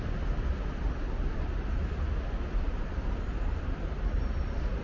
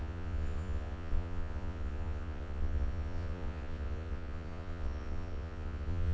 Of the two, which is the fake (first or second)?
second